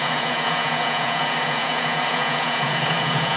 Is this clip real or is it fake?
fake